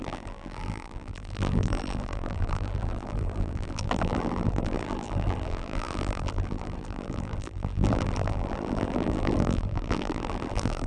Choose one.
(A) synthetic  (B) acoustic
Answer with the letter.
A